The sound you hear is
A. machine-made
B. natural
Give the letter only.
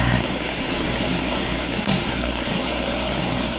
A